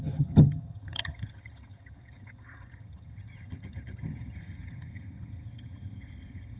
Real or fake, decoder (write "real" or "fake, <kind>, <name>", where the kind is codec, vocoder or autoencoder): fake, vocoder, HiFi-GAN